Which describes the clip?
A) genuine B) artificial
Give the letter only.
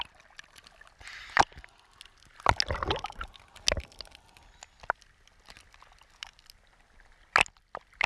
A